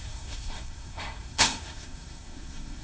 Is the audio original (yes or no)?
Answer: no